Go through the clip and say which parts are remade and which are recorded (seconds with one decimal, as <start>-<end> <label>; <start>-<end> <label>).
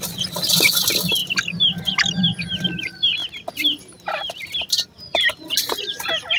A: 0.0-6.4 recorded